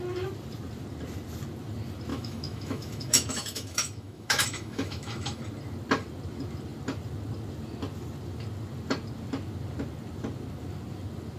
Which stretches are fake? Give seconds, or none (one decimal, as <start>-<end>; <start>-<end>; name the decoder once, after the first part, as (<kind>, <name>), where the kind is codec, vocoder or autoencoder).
2.1-5.4 (autoencoder, DAC-VAE)